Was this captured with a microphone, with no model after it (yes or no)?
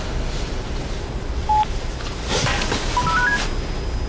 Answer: yes